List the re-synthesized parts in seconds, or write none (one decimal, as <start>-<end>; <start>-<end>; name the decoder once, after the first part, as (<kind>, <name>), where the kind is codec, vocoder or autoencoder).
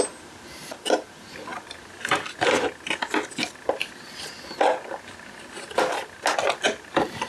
none